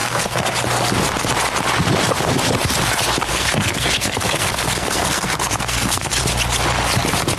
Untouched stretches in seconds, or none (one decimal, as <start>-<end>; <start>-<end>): 0.5-3.3; 6.1-7.4